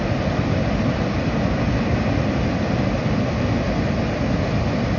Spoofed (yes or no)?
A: no